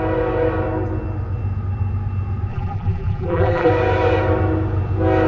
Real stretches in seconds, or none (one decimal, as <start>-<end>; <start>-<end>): 0.0-2.5; 3.7-5.3